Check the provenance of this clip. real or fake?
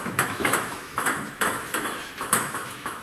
fake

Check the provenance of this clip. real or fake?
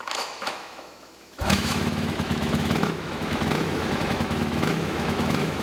fake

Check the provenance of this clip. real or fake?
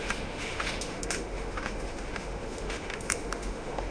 fake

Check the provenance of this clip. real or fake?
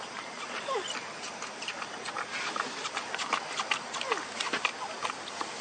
real